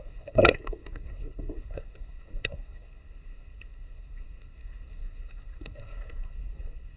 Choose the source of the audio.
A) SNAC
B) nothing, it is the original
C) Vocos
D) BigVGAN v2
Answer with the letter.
A